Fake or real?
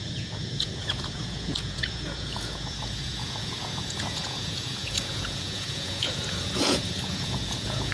fake